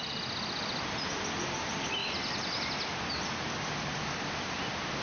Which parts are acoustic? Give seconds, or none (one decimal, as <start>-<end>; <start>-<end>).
0.0-5.0